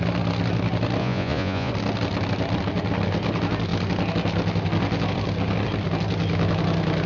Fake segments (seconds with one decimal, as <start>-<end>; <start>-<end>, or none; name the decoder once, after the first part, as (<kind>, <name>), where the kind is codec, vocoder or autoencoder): 1.0-1.7 (vocoder, Vocos)